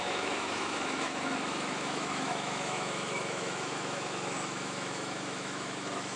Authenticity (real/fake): fake